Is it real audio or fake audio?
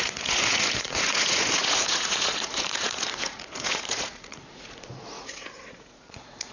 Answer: fake